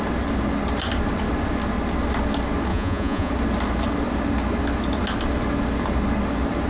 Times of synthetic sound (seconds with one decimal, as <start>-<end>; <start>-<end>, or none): 2.7-3.3